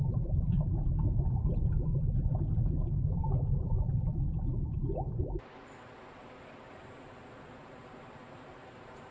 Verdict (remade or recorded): remade